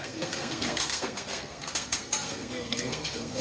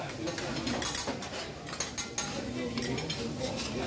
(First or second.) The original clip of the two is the second